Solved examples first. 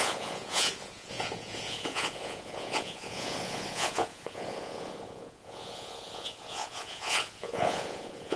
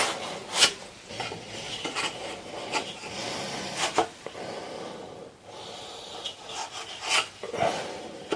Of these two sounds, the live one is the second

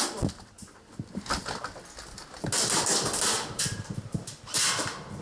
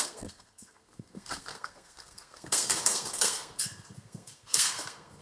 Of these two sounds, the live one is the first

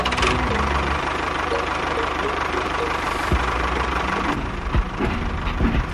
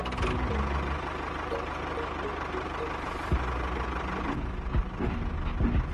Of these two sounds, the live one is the second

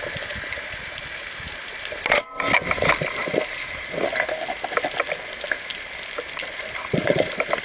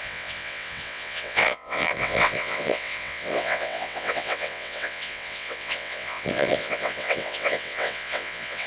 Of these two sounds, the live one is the first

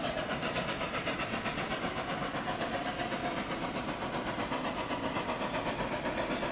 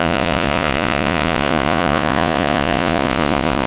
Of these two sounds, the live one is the first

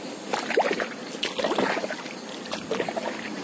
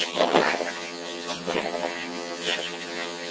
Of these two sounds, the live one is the first